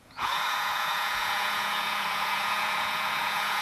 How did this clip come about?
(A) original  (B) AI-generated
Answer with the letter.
B